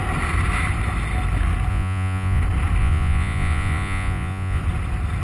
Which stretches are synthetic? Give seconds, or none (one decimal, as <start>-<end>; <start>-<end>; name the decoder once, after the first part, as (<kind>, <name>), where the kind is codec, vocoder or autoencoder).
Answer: 1.7-2.4 (vocoder, Vocos); 2.8-4.6